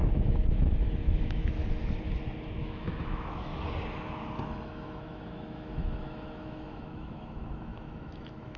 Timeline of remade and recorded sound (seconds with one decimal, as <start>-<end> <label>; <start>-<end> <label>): 0.0-1.6 remade; 1.6-2.6 recorded; 2.6-3.5 remade; 3.5-4.5 recorded; 4.5-8.6 remade